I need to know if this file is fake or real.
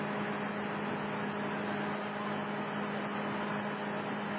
real